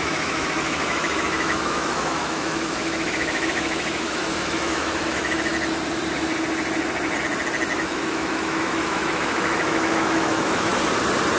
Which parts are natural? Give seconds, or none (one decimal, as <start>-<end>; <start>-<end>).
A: 5.5-7.8; 10.7-11.4